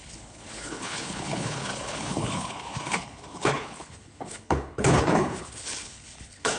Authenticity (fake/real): fake